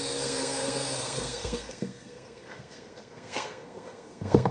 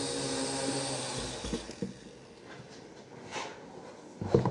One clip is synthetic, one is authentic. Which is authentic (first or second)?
second